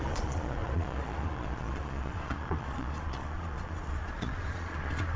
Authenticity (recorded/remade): remade